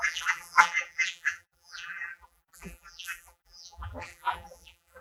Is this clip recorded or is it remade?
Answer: remade